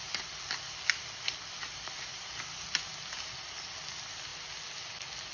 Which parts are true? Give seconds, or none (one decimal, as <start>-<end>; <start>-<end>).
0.0-5.3